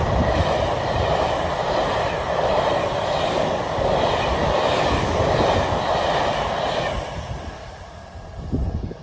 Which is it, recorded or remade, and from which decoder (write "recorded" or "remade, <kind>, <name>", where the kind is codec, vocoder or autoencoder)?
remade, vocoder, BigVGAN v2